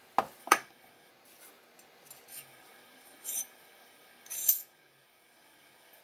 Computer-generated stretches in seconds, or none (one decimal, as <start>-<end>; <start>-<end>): 0.4-1.1; 2.3-6.0